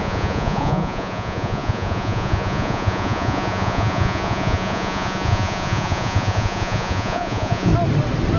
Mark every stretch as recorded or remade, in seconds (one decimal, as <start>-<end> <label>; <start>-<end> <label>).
0.0-7.7 remade; 7.7-8.4 recorded